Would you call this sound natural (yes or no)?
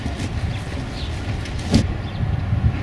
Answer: yes